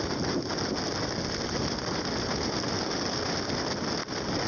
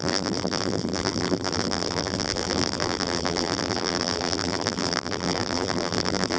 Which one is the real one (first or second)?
first